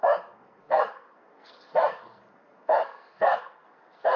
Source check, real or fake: fake